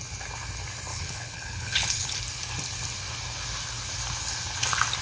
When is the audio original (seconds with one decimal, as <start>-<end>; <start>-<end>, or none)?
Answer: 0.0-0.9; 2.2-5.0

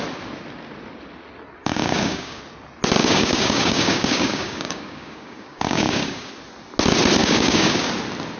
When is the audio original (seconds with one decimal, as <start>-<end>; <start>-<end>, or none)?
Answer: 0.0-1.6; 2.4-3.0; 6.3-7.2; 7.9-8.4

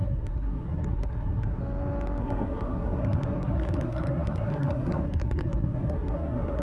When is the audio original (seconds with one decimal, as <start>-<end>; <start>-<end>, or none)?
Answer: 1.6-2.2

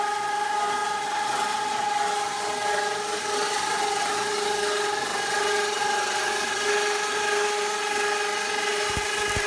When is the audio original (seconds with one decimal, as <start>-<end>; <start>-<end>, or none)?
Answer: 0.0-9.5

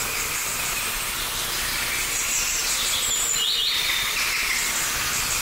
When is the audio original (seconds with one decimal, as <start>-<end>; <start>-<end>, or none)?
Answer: 0.0-0.5; 1.1-2.6